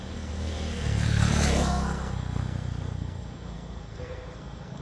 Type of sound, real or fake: fake